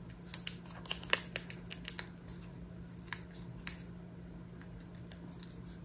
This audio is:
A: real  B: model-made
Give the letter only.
A